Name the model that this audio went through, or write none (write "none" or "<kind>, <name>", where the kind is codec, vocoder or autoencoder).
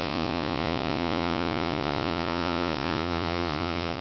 vocoder, Vocos